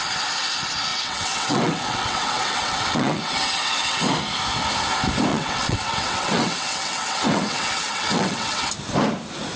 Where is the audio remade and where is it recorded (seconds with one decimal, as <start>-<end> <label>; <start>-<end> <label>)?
0.0-0.9 recorded; 0.9-4.0 remade; 4.0-5.3 recorded; 5.3-8.7 remade; 8.7-9.6 recorded